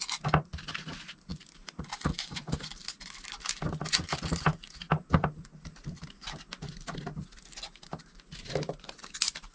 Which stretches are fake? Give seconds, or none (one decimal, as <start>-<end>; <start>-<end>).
none